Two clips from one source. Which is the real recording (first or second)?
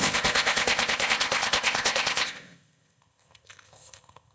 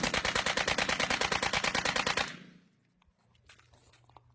second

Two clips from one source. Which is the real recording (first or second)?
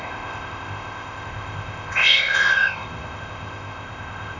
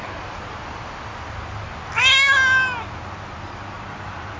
second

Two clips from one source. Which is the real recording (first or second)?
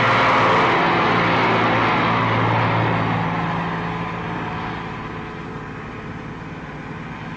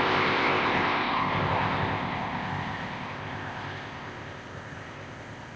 first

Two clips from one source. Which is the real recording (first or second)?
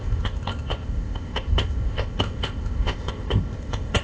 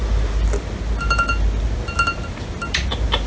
second